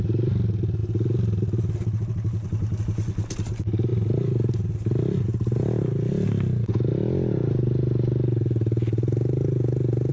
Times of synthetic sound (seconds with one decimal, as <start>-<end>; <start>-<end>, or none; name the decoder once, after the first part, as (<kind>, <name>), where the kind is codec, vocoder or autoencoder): none